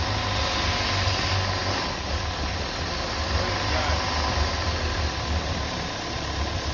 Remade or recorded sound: recorded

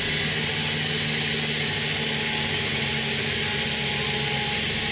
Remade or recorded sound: recorded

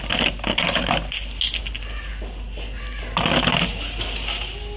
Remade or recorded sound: recorded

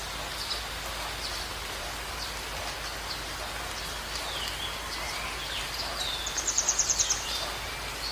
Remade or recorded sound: recorded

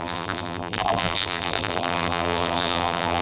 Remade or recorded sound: remade